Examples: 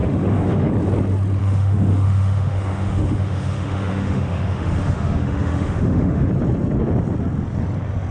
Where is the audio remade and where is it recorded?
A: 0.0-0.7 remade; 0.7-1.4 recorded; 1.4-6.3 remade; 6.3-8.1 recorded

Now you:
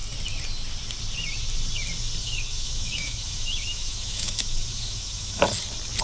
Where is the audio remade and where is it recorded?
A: 0.0-2.2 recorded; 2.2-5.4 remade; 5.4-6.0 recorded

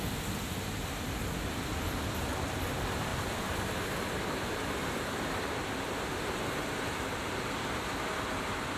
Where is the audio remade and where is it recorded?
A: 0.0-8.8 recorded

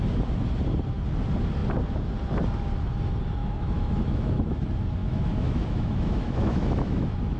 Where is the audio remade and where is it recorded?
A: 0.0-3.4 recorded; 3.4-4.6 remade; 4.6-5.0 recorded; 5.0-7.4 remade

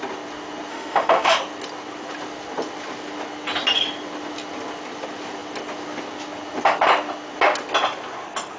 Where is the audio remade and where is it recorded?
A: 0.0-0.7 recorded; 0.7-1.4 remade; 1.4-8.6 recorded